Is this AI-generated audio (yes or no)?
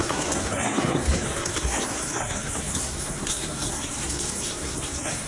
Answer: yes